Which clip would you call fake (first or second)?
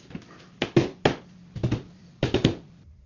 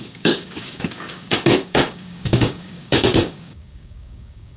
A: second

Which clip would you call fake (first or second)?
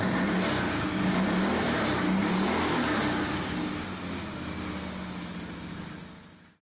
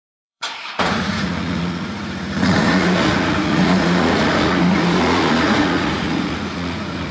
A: second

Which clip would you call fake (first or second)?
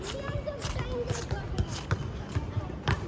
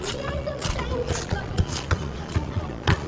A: second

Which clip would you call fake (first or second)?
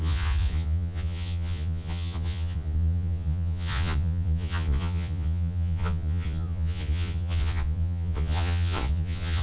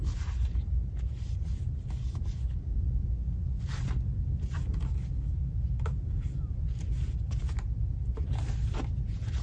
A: first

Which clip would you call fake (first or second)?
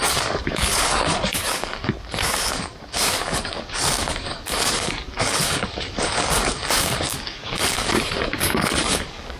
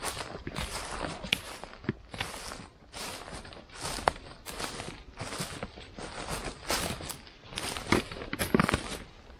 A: first